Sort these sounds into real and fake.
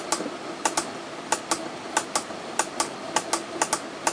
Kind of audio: real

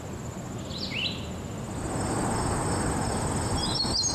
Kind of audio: real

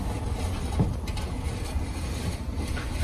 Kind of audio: real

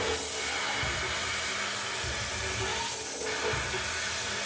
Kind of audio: real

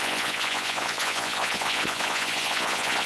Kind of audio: fake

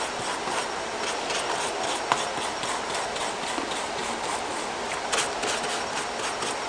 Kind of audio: real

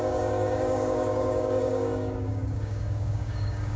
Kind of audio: fake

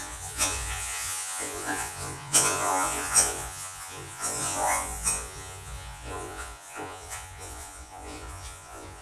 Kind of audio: fake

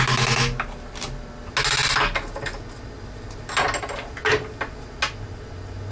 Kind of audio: real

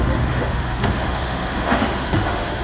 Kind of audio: fake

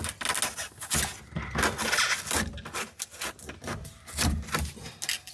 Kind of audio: real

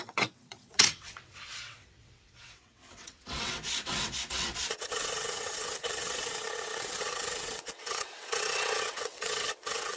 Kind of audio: fake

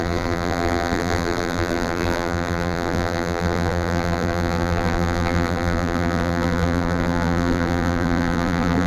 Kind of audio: fake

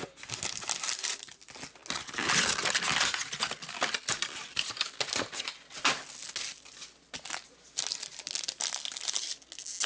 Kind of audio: real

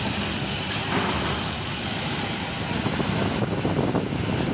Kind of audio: real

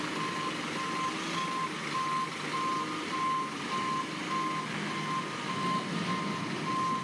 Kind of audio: real